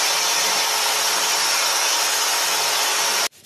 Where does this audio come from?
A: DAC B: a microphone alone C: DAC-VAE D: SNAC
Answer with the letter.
B